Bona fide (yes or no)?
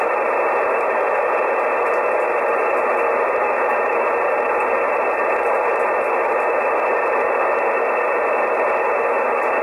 yes